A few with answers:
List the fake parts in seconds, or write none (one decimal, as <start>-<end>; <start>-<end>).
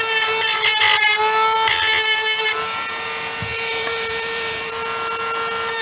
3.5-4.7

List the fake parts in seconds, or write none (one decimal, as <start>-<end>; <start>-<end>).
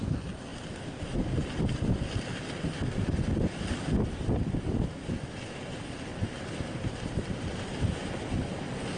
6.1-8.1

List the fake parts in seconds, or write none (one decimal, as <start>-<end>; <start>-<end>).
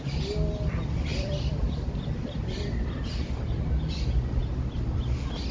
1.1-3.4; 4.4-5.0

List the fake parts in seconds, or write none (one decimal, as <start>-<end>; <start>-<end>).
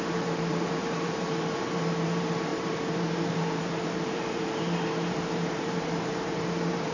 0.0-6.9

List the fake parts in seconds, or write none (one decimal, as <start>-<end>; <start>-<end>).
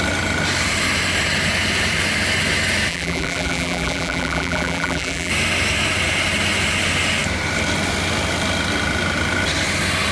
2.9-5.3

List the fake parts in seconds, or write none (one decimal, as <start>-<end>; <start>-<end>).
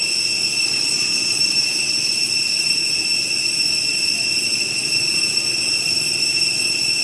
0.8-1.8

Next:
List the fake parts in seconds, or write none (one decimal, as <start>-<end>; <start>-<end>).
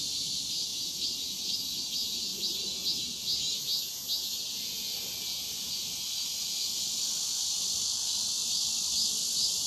0.7-1.7; 6.3-8.3